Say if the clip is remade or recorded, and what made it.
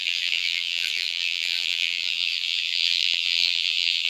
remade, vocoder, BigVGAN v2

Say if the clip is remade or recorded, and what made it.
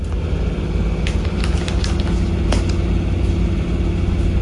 recorded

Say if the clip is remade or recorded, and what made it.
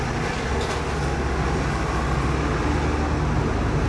recorded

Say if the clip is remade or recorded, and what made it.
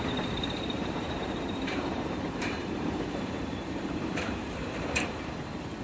remade, vocoder, BigVGAN v2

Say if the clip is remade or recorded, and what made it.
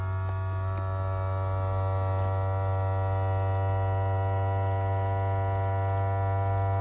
recorded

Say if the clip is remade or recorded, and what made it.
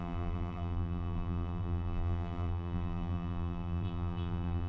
remade, vocoder, BigVGAN v2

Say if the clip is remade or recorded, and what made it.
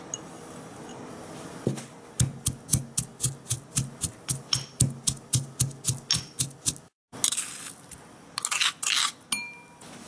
recorded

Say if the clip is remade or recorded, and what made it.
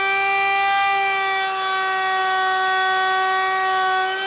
recorded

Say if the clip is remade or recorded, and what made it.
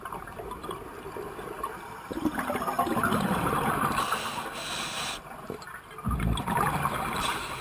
recorded